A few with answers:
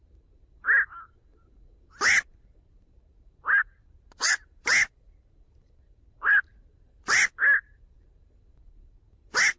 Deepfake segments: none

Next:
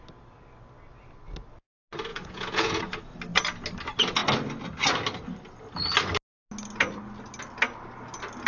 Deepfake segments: 2.1-2.8 (vocoder, Vocos)

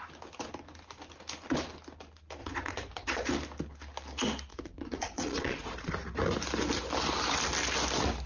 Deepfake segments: 2.4-3.3 (vocoder, Vocos); 4.5-5.9

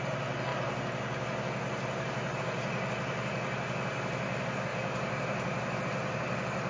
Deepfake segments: none

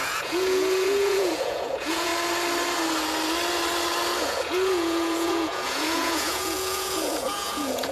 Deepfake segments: 0.0-2.1 (vocoder, Vocos); 4.2-7.9

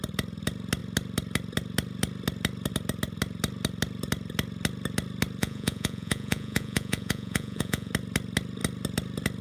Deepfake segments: 5.4-7.9 (vocoder, Vocos)